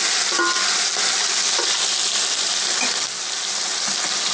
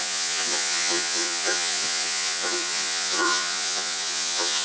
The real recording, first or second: first